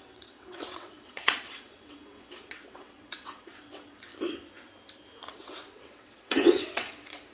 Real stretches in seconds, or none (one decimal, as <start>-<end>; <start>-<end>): 4.1-5.3